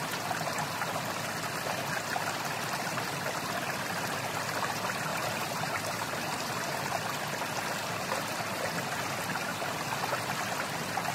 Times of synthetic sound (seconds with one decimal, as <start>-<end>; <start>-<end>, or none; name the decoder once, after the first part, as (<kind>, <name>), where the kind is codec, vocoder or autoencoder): 5.1-6.8 (vocoder, BigVGAN v2); 9.5-10.0